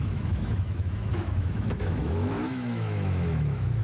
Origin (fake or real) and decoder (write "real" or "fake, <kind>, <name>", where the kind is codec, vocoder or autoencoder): fake, autoencoder, DAC-VAE